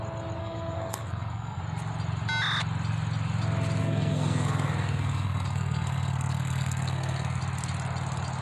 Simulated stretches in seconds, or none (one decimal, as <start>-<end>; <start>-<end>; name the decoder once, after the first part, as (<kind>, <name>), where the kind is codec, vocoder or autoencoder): 0.4-1.6 (codec, SNAC); 3.8-7.4